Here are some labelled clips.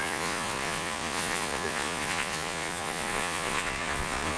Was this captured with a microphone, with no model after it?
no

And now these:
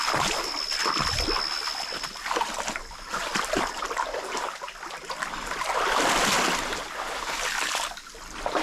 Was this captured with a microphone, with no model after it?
yes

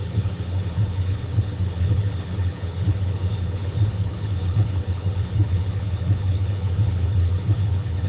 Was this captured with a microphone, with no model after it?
no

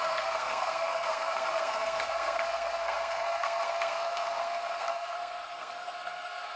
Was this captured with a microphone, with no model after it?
no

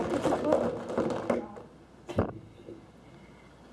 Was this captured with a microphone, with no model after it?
yes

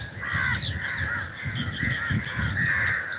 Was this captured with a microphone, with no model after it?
yes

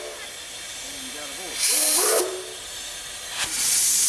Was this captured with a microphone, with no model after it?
yes